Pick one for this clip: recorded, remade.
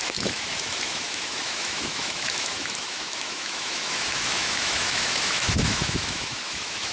remade